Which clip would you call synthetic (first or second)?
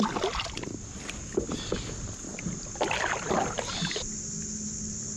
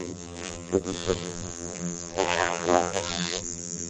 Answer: second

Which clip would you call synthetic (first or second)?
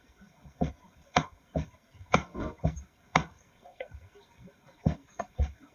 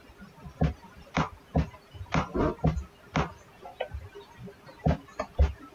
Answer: first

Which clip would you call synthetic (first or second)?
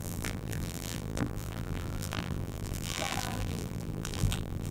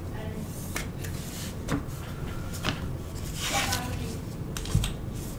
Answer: first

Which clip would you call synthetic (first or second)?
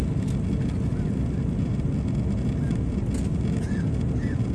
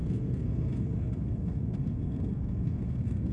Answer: second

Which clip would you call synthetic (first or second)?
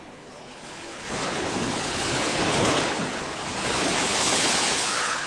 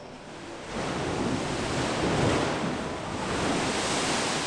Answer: first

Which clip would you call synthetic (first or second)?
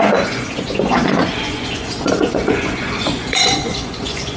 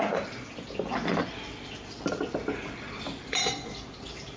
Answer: first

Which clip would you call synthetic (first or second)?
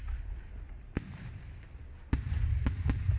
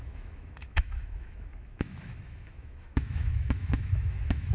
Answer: second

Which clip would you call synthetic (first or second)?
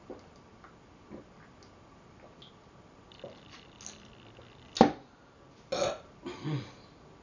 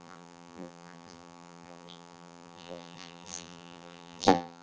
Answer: second